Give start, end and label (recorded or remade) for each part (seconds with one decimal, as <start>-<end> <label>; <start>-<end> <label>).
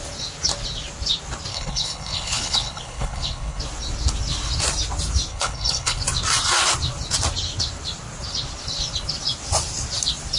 0.0-1.5 recorded; 1.5-3.6 remade; 3.6-5.3 recorded; 5.3-6.0 remade; 6.0-10.4 recorded